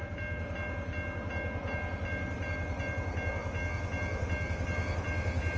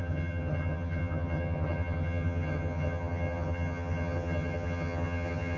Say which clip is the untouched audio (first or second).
first